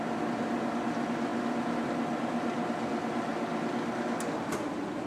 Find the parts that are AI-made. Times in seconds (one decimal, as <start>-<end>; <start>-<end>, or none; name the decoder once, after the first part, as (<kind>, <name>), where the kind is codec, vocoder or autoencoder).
none